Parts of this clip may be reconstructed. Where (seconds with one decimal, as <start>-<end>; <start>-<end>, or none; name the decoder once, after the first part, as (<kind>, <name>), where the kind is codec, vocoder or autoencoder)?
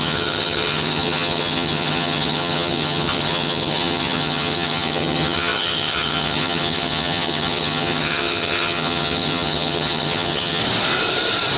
0.0-10.6 (vocoder, HiFi-GAN)